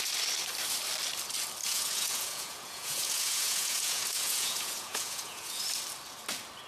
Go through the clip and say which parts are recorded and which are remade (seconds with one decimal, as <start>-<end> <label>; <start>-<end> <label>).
0.0-1.6 recorded; 1.6-5.6 remade; 5.6-6.7 recorded